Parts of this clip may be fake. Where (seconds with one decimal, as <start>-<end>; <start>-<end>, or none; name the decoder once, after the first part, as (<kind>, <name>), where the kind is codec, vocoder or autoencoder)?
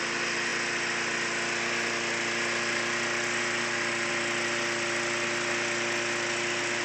none